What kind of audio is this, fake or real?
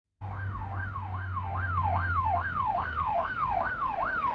fake